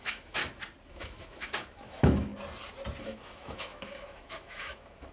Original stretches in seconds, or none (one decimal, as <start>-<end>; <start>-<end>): 0.4-0.9; 2.3-3.0